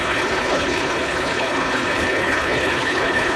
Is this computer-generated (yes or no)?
yes